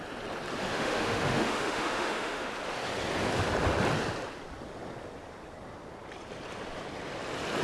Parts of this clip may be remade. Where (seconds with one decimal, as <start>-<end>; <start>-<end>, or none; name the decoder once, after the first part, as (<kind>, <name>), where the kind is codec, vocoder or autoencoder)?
0.7-2.5 (autoencoder, DAC-VAE)